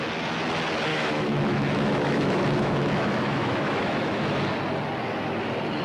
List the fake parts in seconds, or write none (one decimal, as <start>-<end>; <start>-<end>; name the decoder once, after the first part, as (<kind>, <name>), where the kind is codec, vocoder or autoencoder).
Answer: 0.9-4.4 (autoencoder, DAC-VAE)